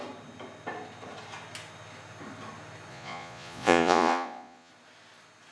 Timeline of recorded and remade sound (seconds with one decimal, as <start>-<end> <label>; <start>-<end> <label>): 0.0-2.9 recorded; 2.9-4.7 remade; 4.7-5.5 recorded